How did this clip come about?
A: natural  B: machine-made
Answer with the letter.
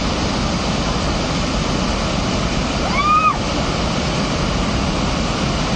A